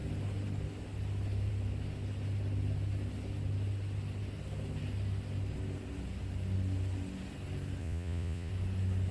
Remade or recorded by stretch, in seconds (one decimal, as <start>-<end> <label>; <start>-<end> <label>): 0.0-7.8 recorded; 7.8-8.5 remade; 8.5-9.1 recorded

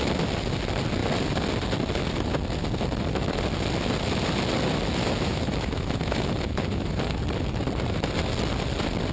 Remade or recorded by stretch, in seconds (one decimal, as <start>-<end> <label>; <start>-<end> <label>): 0.0-5.0 recorded; 5.0-7.2 remade; 7.2-9.1 recorded

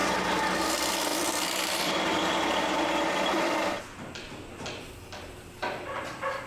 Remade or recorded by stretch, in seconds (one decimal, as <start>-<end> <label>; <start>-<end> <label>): 0.0-1.1 recorded; 1.1-4.9 remade; 4.9-6.5 recorded

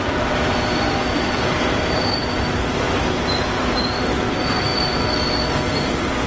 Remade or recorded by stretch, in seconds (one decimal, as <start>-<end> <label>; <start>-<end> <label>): 0.0-6.3 recorded

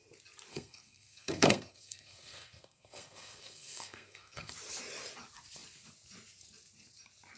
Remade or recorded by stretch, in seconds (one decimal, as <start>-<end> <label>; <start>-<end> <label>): 0.0-0.5 recorded; 0.5-4.5 remade; 4.5-7.4 recorded

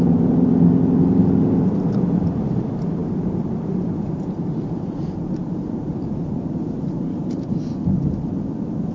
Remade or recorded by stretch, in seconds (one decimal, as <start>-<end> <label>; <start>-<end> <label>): 0.0-3.0 recorded; 3.0-7.6 remade; 7.6-8.9 recorded

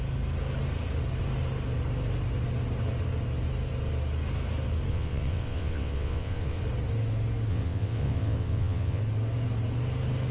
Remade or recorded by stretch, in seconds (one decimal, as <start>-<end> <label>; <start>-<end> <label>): 0.0-4.9 recorded; 4.9-6.6 remade; 6.6-7.5 recorded; 7.5-9.0 remade; 9.0-10.3 recorded